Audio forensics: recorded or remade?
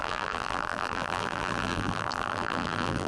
remade